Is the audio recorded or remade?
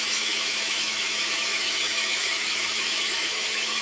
remade